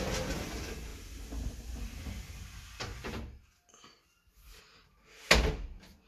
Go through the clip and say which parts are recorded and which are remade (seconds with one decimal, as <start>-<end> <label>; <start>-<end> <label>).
0.0-6.1 recorded